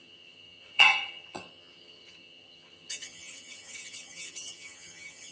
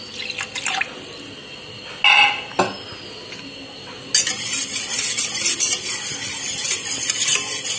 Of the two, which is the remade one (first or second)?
first